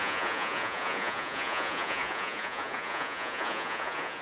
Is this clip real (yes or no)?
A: no